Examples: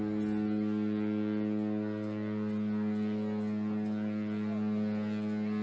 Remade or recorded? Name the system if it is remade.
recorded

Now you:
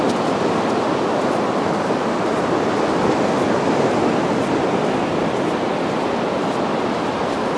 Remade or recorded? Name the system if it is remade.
recorded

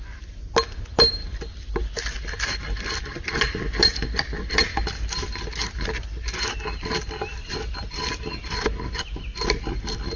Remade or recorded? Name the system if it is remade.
recorded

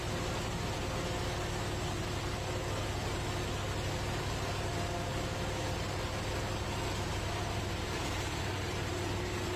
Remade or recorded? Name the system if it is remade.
recorded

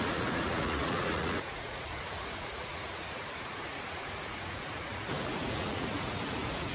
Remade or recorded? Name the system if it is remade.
remade, vocoder, Vocos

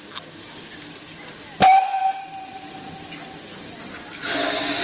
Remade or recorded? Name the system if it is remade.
recorded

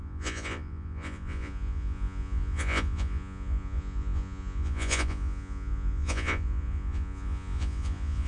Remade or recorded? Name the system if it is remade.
remade, vocoder, Vocos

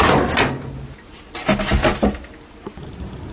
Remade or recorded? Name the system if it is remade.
recorded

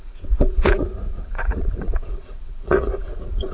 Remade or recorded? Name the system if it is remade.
remade, vocoder, Vocos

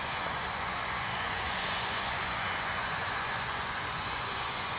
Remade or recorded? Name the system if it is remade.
remade, vocoder, Vocos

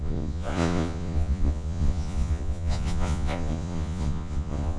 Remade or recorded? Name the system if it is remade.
remade, vocoder, Vocos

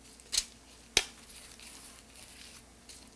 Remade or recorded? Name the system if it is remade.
recorded